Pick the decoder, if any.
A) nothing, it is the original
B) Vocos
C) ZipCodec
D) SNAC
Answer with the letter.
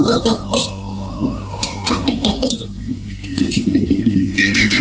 D